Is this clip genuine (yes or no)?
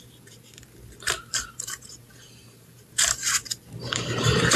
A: no